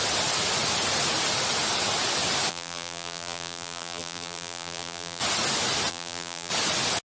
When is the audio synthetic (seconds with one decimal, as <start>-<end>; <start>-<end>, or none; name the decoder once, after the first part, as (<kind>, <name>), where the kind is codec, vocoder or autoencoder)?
2.5-5.2 (vocoder, BigVGAN v2); 5.9-6.5